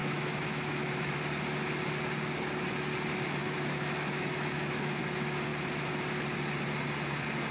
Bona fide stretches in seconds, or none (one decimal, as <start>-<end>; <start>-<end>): 1.1-3.4; 5.0-7.5

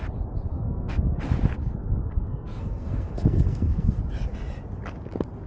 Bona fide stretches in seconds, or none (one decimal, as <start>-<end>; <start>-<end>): 0.0-0.5; 1.2-1.6; 4.0-5.5

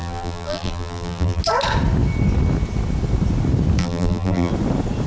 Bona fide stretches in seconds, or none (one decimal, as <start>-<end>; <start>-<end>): 1.4-3.8; 4.5-5.1

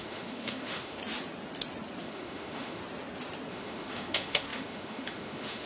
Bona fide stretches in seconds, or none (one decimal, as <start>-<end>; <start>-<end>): 1.0-2.0; 2.8-3.5

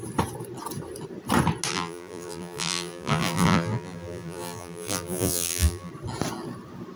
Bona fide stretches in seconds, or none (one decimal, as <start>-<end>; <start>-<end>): 0.0-1.7; 5.9-7.0